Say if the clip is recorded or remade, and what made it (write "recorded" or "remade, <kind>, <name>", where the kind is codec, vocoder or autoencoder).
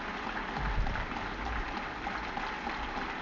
recorded